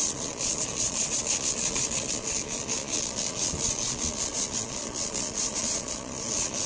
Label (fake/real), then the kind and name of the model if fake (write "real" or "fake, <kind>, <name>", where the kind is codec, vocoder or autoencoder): fake, vocoder, Vocos